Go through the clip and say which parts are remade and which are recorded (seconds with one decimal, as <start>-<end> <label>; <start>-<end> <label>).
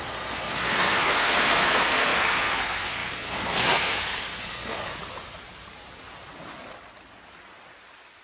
0.0-4.9 remade; 4.9-8.2 recorded